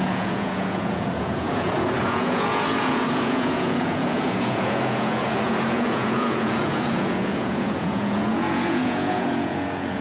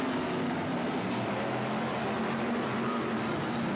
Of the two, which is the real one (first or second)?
second